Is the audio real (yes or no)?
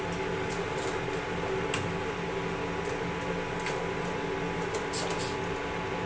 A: yes